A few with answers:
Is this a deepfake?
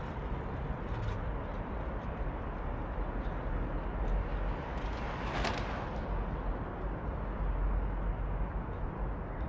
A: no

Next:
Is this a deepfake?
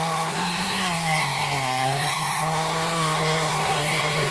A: yes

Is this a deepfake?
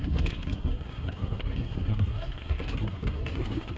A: yes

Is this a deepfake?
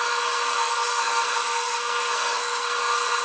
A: yes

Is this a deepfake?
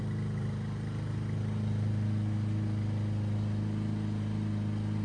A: no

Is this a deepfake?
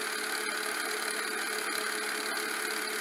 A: no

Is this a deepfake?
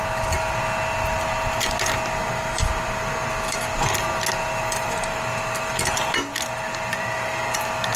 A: no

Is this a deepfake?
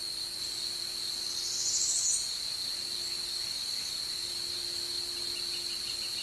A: no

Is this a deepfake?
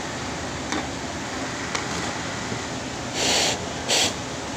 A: no